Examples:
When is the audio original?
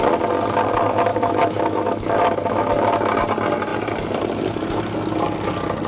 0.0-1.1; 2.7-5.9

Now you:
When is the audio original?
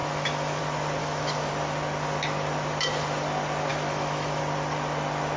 0.6-1.0; 1.5-3.7; 4.4-5.4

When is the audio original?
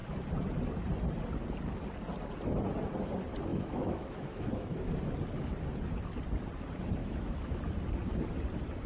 0.0-3.5; 4.9-7.0; 7.6-8.9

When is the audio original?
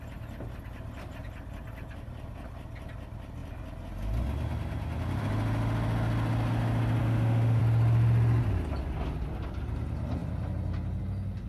0.0-7.0; 7.6-11.5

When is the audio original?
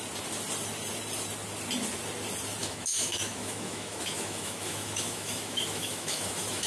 0.0-2.6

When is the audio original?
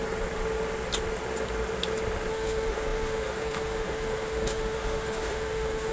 0.0-2.3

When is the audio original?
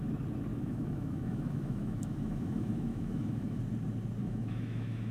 0.0-0.5; 3.6-4.2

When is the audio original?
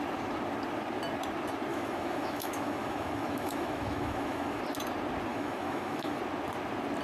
0.0-1.7; 4.6-5.3; 6.2-7.0